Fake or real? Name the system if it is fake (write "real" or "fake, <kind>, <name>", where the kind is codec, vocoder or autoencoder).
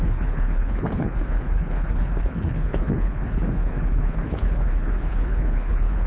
fake, codec, HILCodec